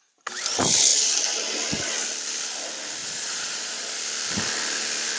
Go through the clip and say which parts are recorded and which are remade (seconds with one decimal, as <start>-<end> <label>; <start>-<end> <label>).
0.0-3.0 recorded; 3.0-4.0 remade; 4.0-5.2 recorded